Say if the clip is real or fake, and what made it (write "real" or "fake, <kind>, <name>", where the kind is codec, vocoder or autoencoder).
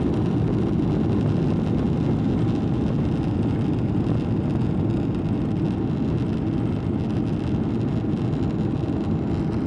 real